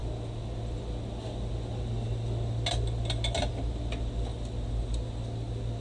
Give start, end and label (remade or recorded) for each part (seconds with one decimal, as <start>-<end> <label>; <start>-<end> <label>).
0.0-5.8 recorded